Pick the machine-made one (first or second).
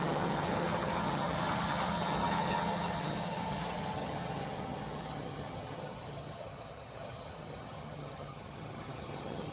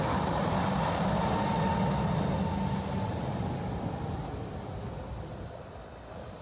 first